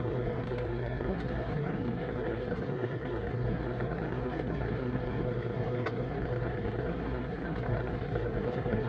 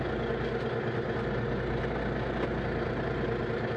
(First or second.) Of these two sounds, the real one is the second